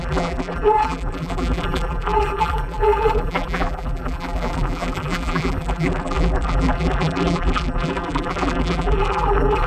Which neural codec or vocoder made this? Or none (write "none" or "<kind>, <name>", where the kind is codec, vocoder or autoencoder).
vocoder, BigVGAN v2